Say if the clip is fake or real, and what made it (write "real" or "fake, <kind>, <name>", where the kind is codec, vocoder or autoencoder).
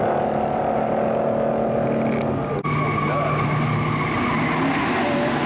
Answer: real